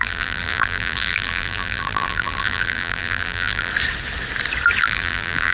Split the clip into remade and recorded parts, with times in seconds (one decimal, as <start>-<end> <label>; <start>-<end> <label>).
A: 0.0-3.7 remade; 3.7-4.8 recorded; 4.8-5.5 remade